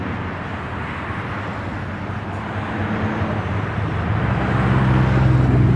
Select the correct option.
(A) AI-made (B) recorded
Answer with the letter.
B